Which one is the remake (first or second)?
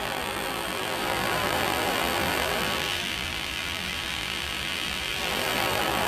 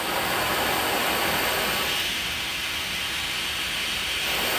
first